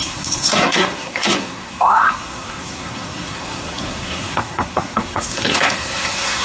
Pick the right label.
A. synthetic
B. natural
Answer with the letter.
A